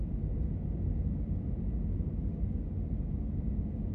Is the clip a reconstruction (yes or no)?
no